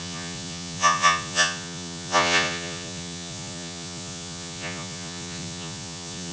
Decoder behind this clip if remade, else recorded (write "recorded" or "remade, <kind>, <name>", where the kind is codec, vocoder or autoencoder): remade, vocoder, Vocos